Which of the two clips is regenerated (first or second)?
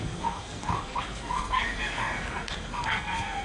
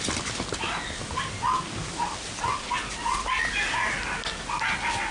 first